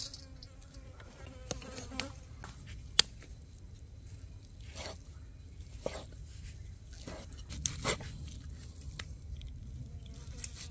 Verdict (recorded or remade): recorded